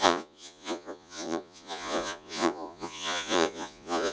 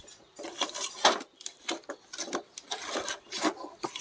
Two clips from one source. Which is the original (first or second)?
second